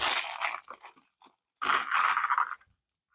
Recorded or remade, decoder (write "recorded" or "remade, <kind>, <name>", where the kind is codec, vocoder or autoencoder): recorded